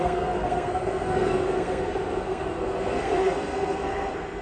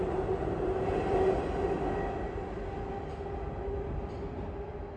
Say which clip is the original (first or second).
second